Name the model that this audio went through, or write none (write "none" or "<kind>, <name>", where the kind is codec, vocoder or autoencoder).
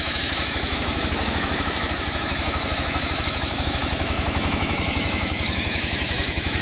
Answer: autoencoder, DAC-VAE